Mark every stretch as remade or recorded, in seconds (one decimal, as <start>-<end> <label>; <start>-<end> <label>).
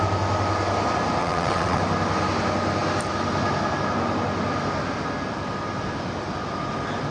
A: 0.0-1.2 recorded; 1.2-1.8 remade; 1.8-7.1 recorded